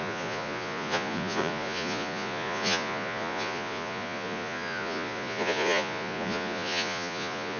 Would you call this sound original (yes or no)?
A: no